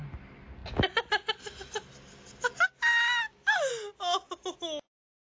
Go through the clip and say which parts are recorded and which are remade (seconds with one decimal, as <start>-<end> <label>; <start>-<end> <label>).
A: 0.0-5.2 recorded